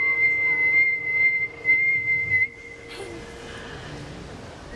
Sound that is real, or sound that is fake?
real